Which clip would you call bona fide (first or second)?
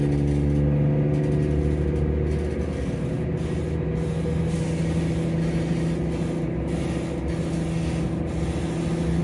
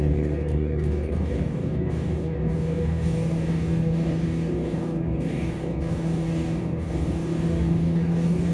first